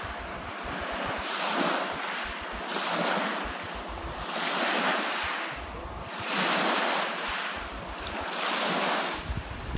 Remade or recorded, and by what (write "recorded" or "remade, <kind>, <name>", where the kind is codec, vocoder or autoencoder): recorded